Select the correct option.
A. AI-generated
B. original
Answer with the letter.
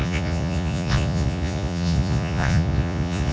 A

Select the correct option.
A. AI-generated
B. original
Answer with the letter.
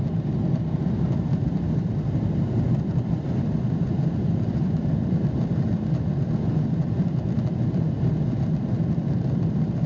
A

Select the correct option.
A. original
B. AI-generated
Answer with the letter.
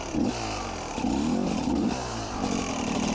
A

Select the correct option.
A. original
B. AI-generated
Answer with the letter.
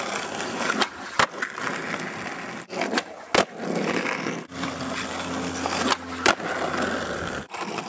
A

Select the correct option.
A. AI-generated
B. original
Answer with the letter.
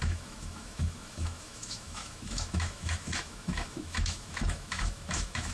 A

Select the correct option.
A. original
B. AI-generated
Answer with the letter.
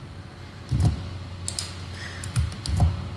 A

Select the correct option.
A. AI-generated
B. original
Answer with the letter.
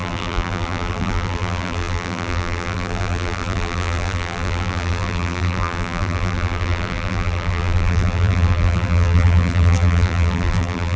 A